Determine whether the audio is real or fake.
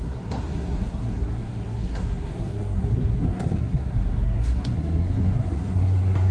fake